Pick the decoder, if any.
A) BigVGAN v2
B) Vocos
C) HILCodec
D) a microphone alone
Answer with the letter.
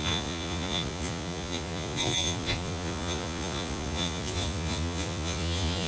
B